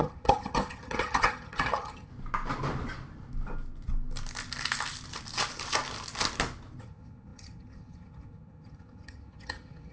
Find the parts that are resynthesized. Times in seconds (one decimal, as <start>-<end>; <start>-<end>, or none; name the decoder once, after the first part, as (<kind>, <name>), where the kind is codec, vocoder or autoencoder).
0.0-2.1 (vocoder, HiFi-GAN); 6.8-9.9